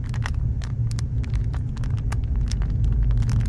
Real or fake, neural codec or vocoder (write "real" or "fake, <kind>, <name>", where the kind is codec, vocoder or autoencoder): real